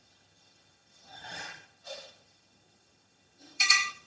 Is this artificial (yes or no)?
yes